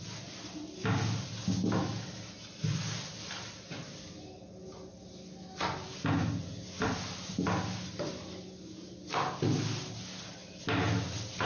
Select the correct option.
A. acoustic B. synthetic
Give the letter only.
A